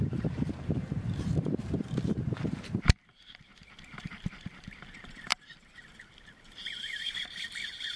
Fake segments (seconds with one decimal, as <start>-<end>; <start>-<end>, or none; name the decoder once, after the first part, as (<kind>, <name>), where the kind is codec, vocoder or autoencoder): 0.0-5.3 (vocoder, BigVGAN v2); 6.4-8.0